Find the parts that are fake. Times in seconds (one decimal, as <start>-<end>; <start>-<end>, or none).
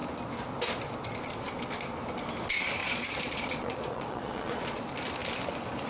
2.8-4.8